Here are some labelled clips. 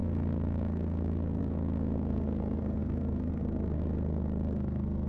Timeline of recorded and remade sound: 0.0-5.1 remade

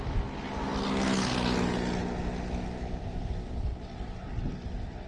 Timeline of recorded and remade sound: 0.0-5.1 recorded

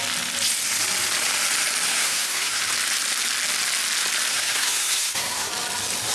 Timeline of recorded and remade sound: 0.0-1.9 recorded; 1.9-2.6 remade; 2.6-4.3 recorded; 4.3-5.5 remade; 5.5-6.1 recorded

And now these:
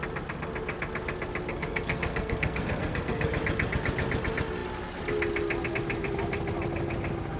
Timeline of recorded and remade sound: 0.0-1.5 recorded; 1.5-3.3 remade; 3.3-7.4 recorded